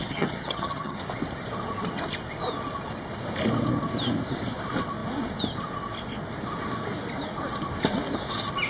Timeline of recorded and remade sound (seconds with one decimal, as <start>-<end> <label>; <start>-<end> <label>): 0.0-1.0 remade; 1.0-8.7 recorded

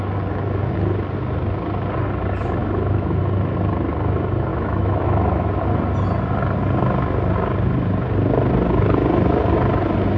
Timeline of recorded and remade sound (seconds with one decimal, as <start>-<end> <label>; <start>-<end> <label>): 0.0-2.6 recorded; 2.6-3.2 remade; 3.2-4.5 recorded; 4.5-5.5 remade; 5.5-10.2 recorded

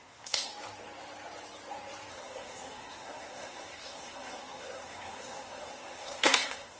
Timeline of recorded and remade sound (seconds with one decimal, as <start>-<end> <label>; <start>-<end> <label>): 0.0-0.5 remade; 0.5-2.1 recorded; 2.1-6.8 remade

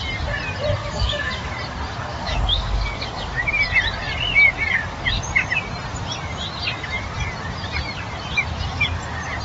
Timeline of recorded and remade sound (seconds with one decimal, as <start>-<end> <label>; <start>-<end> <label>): 0.0-0.8 recorded; 0.8-1.5 remade; 1.5-2.1 recorded; 2.1-3.4 remade; 3.4-9.4 recorded

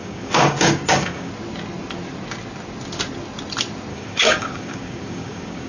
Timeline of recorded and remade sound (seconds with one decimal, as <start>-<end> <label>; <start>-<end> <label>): 0.0-1.3 remade; 1.3-3.9 recorded; 3.9-5.7 remade